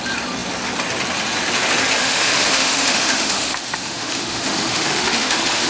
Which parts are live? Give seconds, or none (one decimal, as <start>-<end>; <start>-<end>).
0.0-2.0